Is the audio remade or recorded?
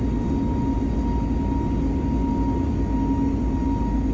recorded